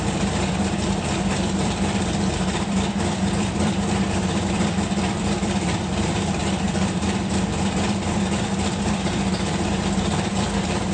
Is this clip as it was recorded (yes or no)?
no